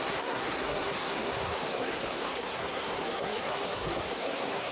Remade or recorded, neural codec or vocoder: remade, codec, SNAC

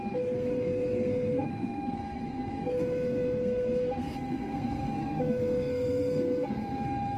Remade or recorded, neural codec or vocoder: remade, codec, SNAC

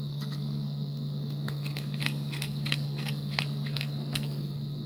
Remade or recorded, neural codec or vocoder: remade, codec, SNAC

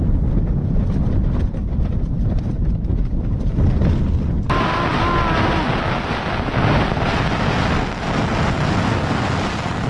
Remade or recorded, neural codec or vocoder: recorded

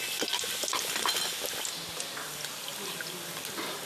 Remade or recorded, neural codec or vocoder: recorded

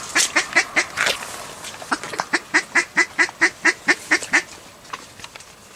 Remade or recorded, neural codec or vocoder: recorded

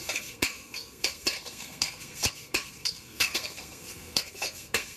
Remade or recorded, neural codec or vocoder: remade, codec, SNAC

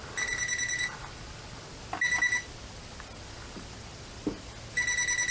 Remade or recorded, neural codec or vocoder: recorded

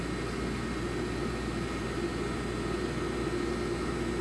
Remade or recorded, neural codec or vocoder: recorded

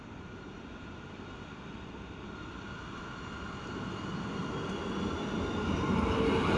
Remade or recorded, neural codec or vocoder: recorded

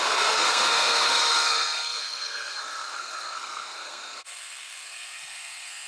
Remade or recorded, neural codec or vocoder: remade, codec, SNAC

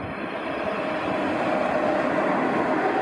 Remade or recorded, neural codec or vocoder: recorded